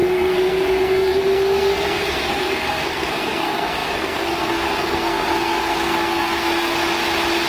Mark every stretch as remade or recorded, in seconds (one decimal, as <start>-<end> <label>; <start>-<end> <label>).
0.0-6.8 remade; 6.8-7.5 recorded